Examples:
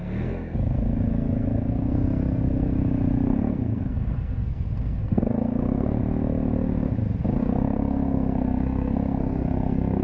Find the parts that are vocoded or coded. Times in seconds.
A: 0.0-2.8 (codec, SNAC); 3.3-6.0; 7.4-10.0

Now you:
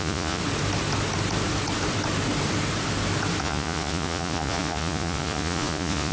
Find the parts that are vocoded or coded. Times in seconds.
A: 0.0-0.4 (vocoder, Vocos); 3.4-6.1

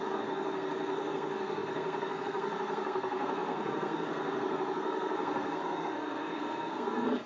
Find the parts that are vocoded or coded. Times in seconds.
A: 0.0-7.3 (codec, SNAC)

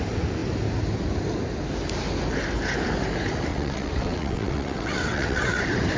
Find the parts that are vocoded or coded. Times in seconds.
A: 3.5-5.6 (vocoder, WaveNeXt)

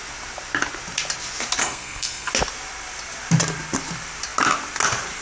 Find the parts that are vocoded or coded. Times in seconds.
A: 1.6-2.3 (codec, SNAC)

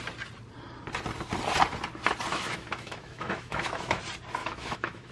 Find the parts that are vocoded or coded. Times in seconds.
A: 2.3-4.0 (autoencoder, DAC-VAE); 4.4-5.1